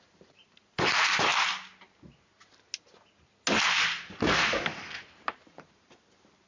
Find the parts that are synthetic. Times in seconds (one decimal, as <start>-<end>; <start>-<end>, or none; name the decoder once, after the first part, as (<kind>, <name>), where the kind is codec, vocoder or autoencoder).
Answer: 0.0-1.3 (vocoder, BigVGAN v2); 4.4-6.5